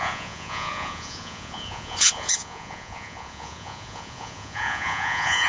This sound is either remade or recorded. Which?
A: remade